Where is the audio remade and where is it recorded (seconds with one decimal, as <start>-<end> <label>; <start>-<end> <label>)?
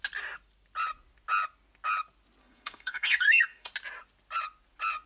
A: 0.0-2.4 recorded; 2.4-3.7 remade; 3.7-5.1 recorded